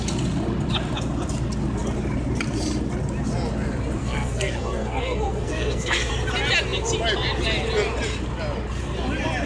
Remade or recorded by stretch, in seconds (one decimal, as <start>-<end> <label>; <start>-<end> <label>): 0.0-4.0 recorded; 4.0-6.1 remade; 6.1-9.5 recorded

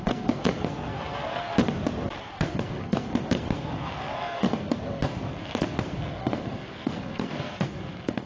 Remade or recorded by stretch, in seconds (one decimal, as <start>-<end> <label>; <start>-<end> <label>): 0.0-1.5 remade; 1.5-2.2 recorded; 2.2-8.3 remade

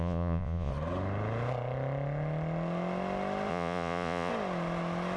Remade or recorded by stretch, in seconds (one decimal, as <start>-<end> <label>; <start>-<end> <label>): 0.0-0.7 remade; 0.7-3.5 recorded; 3.5-4.3 remade; 4.3-5.2 recorded

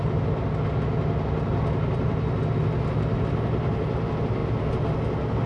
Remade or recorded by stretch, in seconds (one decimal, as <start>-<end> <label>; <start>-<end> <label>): 0.0-5.5 recorded

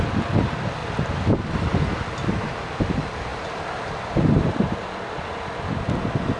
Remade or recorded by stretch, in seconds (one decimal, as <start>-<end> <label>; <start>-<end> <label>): 0.0-6.4 recorded